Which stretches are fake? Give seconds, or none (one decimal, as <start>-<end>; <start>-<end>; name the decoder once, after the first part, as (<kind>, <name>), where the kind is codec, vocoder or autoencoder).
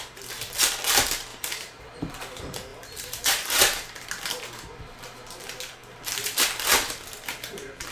1.3-1.8 (vocoder, BigVGAN v2); 2.7-4.1